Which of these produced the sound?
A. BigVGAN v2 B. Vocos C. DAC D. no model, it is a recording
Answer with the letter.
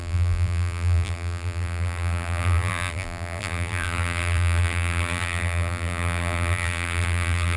A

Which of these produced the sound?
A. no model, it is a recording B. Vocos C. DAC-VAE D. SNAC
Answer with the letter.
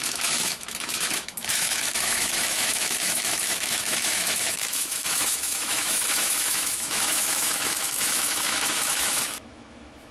C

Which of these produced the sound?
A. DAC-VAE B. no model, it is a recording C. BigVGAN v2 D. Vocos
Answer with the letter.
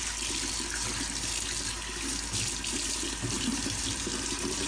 B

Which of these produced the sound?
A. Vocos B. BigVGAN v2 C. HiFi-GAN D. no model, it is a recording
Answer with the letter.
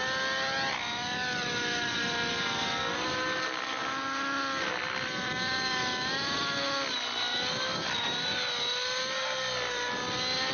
D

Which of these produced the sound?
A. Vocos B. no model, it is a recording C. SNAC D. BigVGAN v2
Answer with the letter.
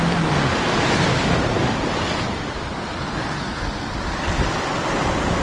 B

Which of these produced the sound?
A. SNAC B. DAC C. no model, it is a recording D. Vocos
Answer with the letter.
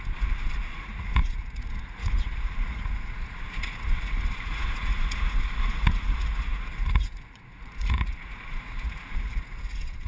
D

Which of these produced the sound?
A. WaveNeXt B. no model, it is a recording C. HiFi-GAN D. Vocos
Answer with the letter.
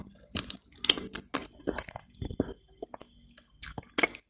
B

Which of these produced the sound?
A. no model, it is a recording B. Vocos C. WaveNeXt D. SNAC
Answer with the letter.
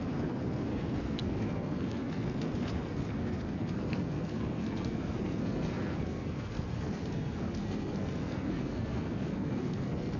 D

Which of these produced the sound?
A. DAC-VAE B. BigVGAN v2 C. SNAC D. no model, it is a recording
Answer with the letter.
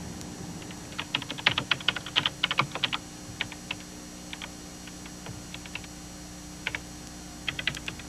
D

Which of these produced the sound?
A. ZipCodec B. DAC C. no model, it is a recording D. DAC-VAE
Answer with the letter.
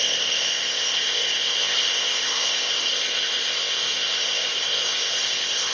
A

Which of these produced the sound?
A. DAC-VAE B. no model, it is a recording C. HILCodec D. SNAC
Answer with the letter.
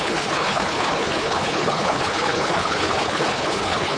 C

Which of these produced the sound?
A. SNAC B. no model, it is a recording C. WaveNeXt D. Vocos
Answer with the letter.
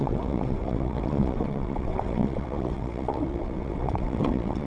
C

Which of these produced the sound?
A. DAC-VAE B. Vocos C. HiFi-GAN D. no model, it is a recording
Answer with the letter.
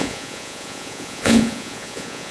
B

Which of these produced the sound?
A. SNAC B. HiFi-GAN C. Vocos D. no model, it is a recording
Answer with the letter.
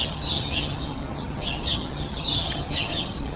B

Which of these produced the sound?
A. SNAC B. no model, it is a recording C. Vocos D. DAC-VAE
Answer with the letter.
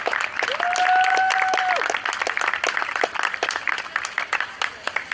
B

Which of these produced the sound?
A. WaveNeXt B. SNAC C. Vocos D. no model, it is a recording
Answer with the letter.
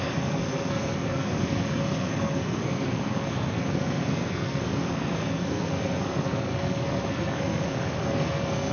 B